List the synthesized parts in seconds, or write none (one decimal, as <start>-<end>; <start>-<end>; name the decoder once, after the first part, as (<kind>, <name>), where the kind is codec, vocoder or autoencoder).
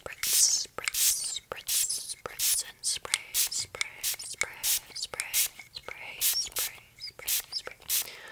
none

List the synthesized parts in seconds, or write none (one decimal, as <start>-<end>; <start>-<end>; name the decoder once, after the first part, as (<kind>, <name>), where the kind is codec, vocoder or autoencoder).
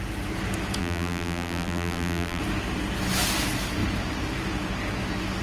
0.8-2.4 (vocoder, BigVGAN v2)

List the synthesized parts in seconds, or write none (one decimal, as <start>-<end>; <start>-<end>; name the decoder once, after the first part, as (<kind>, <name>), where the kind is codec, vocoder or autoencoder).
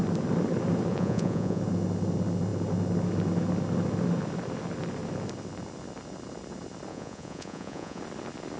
0.9-1.6 (vocoder, Vocos); 6.9-8.0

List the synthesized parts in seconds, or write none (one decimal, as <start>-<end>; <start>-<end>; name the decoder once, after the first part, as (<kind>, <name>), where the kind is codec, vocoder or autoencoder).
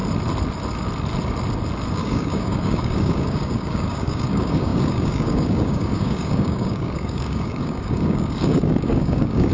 1.9-9.5 (codec, DAC)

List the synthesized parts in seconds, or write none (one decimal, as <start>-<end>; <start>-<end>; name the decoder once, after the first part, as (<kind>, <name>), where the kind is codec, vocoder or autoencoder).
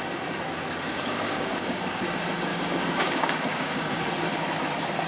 0.9-2.0 (codec, DAC); 2.5-4.1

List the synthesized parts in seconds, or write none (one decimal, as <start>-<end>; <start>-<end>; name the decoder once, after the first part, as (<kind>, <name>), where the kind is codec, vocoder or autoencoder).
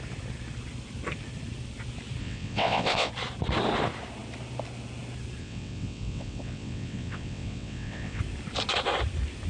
2.2-3.1 (vocoder, WaveNeXt); 5.4-8.2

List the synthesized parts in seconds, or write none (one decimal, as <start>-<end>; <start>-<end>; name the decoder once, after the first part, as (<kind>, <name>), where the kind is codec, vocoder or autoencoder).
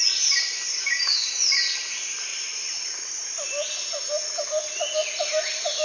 0.7-1.3 (codec, DAC)